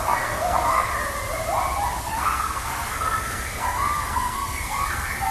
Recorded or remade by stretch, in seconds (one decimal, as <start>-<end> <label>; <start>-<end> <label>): 0.0-0.9 remade; 0.9-2.0 recorded; 2.0-5.3 remade